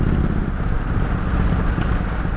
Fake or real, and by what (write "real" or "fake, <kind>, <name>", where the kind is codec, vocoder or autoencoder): real